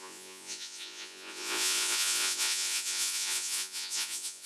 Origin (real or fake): fake